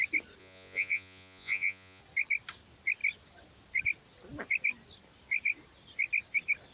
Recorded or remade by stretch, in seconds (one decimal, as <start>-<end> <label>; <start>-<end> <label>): 0.0-0.4 recorded; 0.4-2.0 remade; 2.0-6.7 recorded